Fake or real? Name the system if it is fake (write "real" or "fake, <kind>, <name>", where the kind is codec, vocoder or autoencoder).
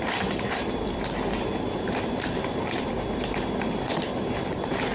fake, vocoder, BigVGAN v2